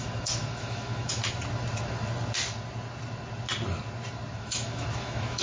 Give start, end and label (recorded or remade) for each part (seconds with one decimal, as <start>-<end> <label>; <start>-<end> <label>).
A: 0.0-1.2 remade; 1.2-4.4 recorded; 4.4-5.4 remade